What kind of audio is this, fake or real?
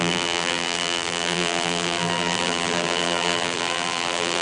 fake